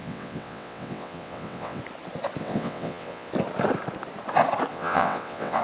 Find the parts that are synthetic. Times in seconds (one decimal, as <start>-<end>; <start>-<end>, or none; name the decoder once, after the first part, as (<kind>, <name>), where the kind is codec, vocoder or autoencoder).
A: 0.0-1.8 (vocoder, WaveNeXt); 2.4-3.3; 4.7-5.6